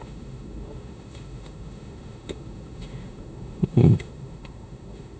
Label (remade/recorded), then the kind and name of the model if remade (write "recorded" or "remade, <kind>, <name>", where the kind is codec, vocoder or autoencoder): remade, autoencoder, DAC-VAE